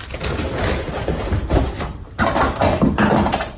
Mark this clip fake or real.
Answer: real